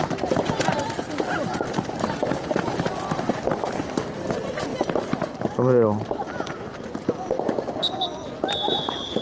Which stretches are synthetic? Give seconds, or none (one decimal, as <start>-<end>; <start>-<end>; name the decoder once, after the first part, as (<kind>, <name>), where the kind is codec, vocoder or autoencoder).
2.2-3.8 (vocoder, BigVGAN v2); 4.7-6.9